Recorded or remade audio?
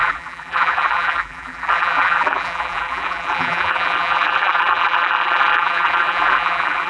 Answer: remade